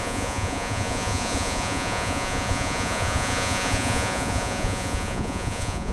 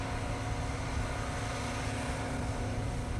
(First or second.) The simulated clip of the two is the first